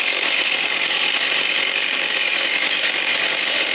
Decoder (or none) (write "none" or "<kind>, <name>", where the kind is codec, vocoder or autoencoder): codec, DAC